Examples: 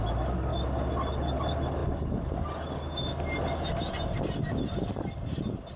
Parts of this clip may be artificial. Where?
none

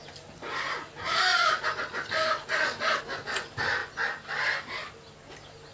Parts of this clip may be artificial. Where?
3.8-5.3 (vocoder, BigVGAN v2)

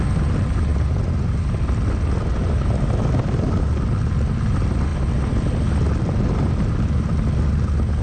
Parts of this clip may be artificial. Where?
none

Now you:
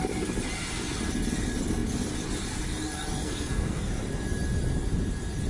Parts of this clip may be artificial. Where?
3.2-3.9 (codec, SNAC)

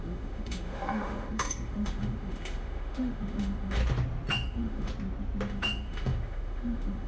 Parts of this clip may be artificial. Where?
0.0-3.8 (autoencoder, DAC-VAE); 4.3-4.9; 5.5-7.1